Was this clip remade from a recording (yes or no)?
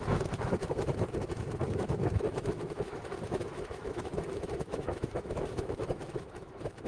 yes